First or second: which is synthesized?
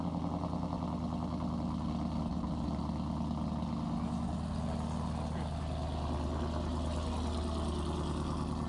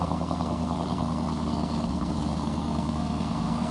second